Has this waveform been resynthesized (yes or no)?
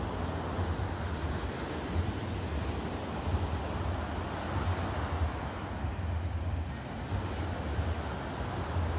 no